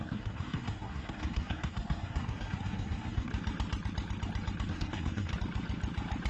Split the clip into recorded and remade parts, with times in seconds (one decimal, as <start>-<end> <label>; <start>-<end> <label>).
0.0-3.3 remade; 3.3-4.7 recorded; 4.7-5.3 remade; 5.3-6.3 recorded